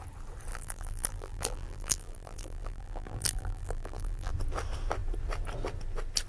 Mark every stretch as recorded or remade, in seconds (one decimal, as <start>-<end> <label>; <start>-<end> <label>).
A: 0.0-0.5 recorded; 0.5-4.3 remade; 4.3-6.3 recorded